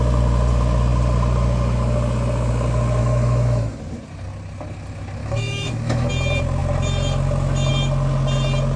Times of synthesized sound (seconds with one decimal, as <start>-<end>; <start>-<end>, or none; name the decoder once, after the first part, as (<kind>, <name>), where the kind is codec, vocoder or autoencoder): 3.0-3.8 (autoencoder, DAC-VAE); 5.2-6.1